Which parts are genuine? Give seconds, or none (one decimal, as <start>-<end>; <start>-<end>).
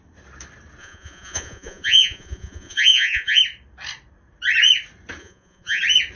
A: 0.0-0.8; 3.4-5.2; 5.8-6.2